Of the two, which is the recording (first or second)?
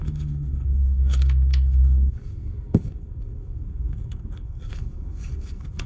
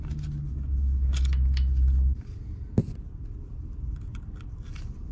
second